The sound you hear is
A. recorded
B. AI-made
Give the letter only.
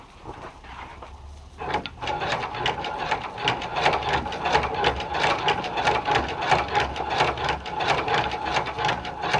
A